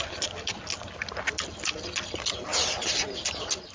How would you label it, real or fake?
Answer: real